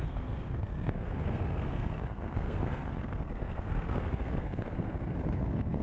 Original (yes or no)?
no